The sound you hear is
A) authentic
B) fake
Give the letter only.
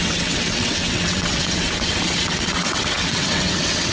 B